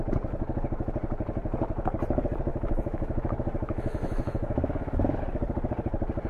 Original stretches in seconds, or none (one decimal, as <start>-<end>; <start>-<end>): 0.0-2.5; 5.2-6.3